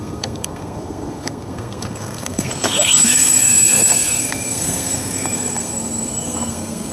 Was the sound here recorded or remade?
remade